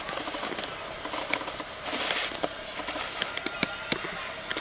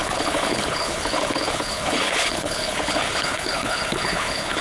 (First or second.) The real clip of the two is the first